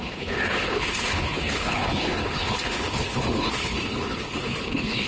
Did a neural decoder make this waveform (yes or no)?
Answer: yes